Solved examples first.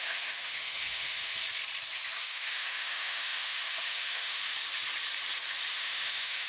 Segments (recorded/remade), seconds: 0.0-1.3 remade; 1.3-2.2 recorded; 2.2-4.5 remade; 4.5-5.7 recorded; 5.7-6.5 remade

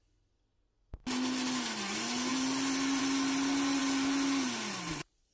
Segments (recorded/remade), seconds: 0.0-5.3 recorded

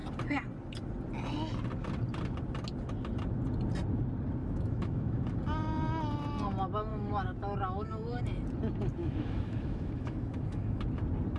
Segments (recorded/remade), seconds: 0.0-4.4 recorded; 4.4-5.4 remade; 5.4-6.9 recorded; 6.9-8.2 remade; 8.2-9.0 recorded; 9.0-10.8 remade; 10.8-11.4 recorded

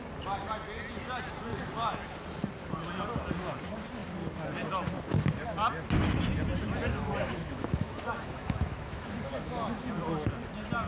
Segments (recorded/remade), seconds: 0.0-6.9 recorded; 6.9-10.3 remade; 10.3-10.9 recorded

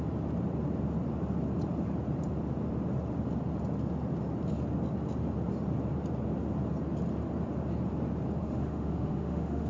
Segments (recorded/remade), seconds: 0.0-8.4 recorded; 8.4-9.7 remade

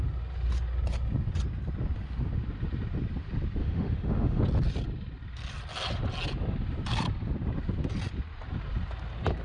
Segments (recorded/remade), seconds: 0.0-3.6 recorded; 3.6-4.4 remade; 4.4-9.4 recorded